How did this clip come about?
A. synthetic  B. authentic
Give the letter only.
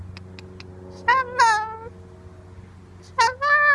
B